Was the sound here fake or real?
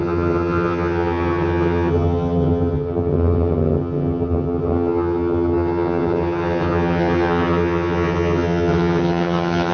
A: fake